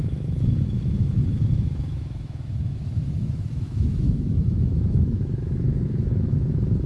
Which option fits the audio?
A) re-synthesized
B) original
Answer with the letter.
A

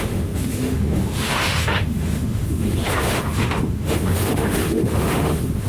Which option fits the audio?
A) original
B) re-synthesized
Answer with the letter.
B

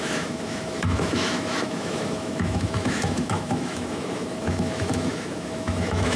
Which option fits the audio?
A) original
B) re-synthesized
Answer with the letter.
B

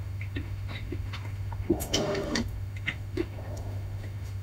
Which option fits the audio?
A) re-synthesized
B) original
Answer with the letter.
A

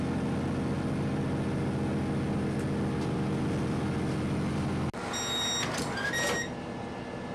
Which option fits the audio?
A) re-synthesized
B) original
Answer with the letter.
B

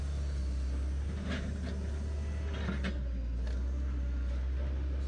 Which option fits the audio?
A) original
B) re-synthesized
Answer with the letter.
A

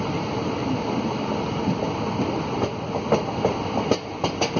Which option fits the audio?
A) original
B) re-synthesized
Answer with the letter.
A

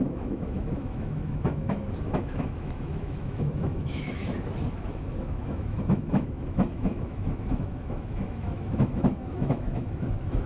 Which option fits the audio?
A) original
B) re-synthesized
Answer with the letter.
B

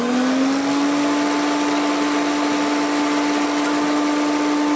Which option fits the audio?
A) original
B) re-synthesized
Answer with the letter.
A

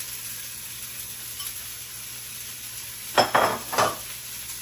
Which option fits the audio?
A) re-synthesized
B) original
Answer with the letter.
B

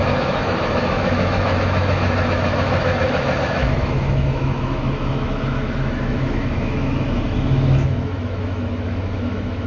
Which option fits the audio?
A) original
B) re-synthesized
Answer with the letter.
B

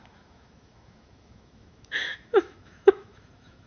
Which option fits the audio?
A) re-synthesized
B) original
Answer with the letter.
A